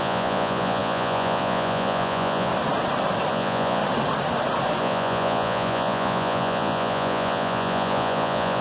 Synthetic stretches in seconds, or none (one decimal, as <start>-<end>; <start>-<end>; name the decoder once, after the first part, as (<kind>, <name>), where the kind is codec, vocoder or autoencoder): 0.0-2.5 (vocoder, Vocos); 3.3-3.8; 4.8-8.6